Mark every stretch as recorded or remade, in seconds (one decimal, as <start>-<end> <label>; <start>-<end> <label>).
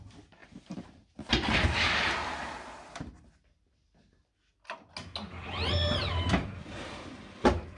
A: 0.0-0.4 recorded; 0.4-1.3 remade; 1.3-6.6 recorded; 6.6-7.8 remade